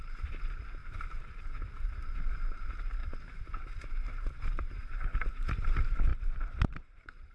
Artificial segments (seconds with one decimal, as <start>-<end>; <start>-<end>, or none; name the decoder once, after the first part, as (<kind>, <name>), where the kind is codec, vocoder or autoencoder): 0.0-3.0 (vocoder, BigVGAN v2); 3.8-4.8; 5.3-6.1; 6.7-7.3